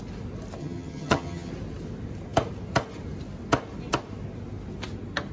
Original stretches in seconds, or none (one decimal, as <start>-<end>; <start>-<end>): 0.0-0.6; 1.5-5.3